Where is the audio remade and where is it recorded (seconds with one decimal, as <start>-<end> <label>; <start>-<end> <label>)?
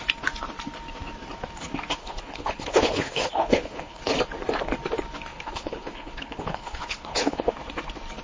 0.0-2.0 recorded; 2.0-4.0 remade; 4.0-5.3 recorded; 5.3-7.5 remade; 7.5-8.2 recorded